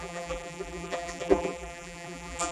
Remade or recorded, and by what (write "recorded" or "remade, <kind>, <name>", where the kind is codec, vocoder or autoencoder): remade, vocoder, BigVGAN v2